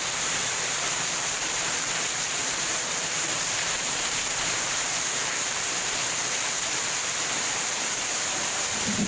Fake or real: fake